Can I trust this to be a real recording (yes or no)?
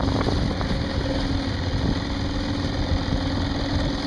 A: yes